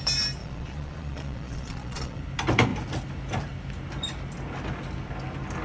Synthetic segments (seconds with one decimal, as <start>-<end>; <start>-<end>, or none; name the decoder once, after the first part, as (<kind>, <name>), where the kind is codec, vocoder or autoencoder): 0.4-2.2 (vocoder, Vocos)